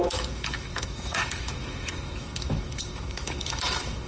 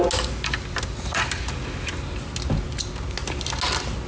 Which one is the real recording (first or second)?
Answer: second